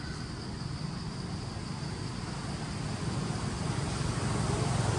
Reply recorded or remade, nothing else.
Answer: recorded